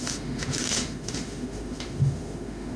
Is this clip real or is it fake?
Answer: fake